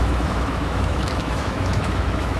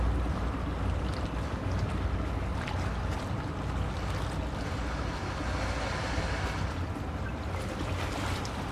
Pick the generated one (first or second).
first